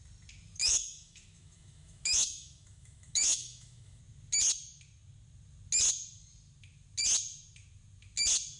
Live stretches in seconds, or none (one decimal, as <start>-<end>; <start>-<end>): 0.0-0.6; 4.0-8.6